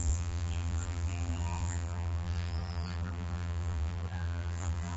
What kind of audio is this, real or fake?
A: fake